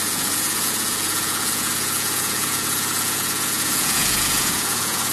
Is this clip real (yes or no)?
no